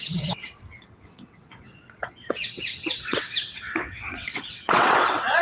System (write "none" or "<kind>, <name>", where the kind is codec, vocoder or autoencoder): vocoder, WaveNeXt